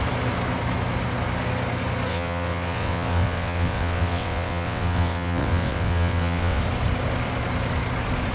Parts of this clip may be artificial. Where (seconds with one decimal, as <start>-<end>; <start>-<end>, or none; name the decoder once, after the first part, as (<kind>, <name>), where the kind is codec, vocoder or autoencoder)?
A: 2.1-6.6 (vocoder, WaveNeXt)